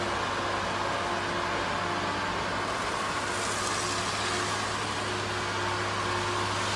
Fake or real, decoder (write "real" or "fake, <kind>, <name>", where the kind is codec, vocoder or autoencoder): real